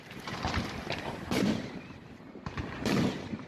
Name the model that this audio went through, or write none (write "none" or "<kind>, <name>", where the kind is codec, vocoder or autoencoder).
vocoder, BigVGAN v2